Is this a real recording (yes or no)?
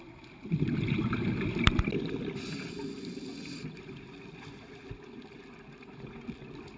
yes